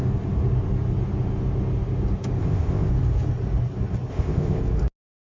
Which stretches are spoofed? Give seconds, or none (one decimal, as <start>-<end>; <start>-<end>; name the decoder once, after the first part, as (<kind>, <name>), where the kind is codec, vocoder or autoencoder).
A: 2.4-2.9 (codec, ZipCodec); 4.1-4.6